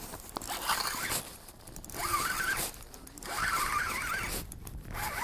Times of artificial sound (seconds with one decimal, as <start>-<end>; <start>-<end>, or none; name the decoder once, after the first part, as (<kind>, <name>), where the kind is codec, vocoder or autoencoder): none